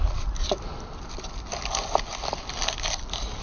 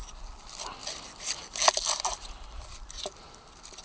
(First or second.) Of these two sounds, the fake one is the first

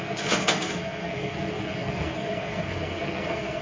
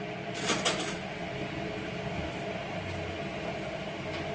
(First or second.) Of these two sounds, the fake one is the first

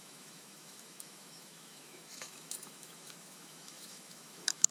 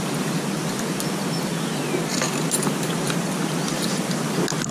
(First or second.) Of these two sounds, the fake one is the first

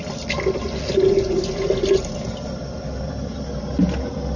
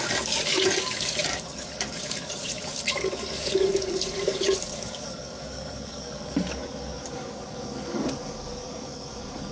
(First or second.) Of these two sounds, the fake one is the second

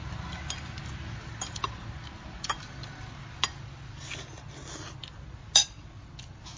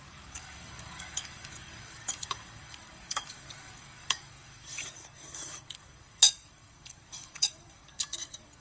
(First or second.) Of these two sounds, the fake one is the second